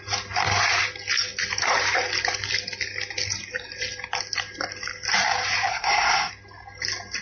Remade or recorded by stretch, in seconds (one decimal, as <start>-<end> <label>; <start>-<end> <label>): 0.0-5.7 recorded; 5.7-6.3 remade; 6.3-7.2 recorded